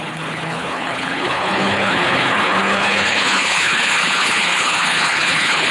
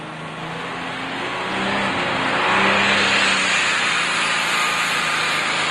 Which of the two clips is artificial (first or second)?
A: first